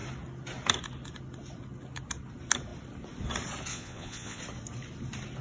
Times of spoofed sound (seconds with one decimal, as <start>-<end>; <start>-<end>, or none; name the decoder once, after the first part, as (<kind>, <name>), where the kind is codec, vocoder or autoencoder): 3.7-4.4 (vocoder, Vocos)